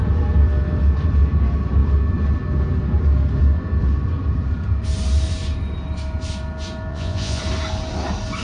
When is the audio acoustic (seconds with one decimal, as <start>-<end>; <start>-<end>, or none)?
0.0-6.9; 7.4-8.4